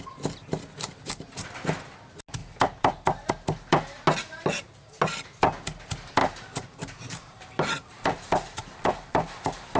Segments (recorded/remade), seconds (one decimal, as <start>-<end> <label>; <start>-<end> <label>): 0.0-6.2 recorded; 6.2-9.8 remade